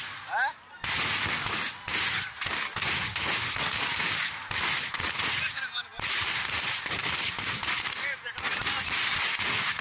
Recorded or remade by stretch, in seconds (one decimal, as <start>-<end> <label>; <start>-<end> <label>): 0.0-5.9 recorded; 5.9-7.3 remade; 7.3-9.8 recorded